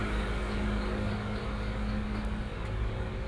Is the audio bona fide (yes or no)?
no